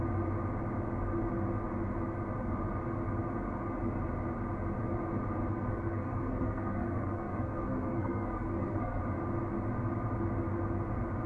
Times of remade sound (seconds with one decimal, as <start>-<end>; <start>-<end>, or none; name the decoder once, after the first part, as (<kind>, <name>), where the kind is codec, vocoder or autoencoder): 5.5-9.0 (codec, SNAC)